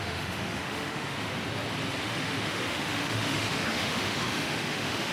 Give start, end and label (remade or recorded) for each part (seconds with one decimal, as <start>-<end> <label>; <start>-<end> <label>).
0.0-1.3 remade; 1.3-2.0 recorded; 2.0-5.1 remade